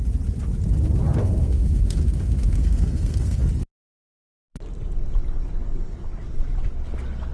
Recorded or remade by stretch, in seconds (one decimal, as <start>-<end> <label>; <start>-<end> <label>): 0.0-1.2 recorded; 1.2-3.4 remade; 3.4-7.3 recorded